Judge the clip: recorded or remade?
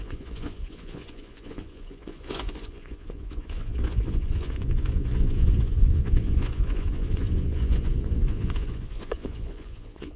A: remade